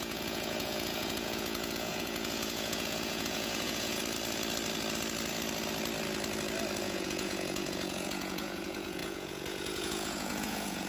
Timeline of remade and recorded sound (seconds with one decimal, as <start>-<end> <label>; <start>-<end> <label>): 0.0-4.0 remade; 4.0-6.8 recorded; 6.8-10.9 remade